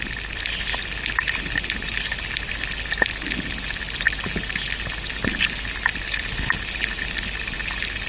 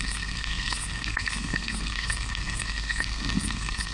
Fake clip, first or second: second